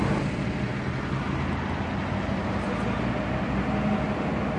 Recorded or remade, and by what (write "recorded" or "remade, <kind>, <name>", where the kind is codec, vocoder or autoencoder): recorded